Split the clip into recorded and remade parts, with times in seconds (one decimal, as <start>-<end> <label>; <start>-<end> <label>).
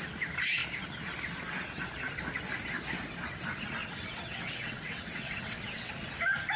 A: 0.0-3.8 recorded; 3.8-5.9 remade; 5.9-6.6 recorded